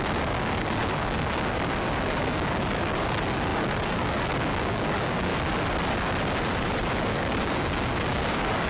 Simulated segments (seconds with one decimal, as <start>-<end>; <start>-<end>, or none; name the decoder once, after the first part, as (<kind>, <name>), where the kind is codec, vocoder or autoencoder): 0.0-5.3 (codec, DAC); 7.0-8.7

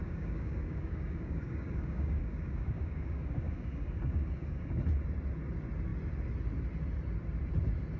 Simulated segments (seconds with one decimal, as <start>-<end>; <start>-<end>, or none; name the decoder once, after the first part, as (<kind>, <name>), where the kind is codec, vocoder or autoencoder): 0.0-4.8 (codec, DAC)